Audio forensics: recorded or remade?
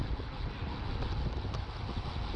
recorded